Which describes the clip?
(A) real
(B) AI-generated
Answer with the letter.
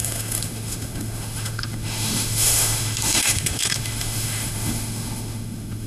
B